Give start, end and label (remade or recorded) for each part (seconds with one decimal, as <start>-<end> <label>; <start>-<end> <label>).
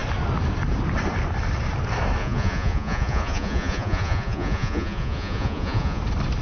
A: 0.0-2.2 recorded; 2.2-6.0 remade; 6.0-6.4 recorded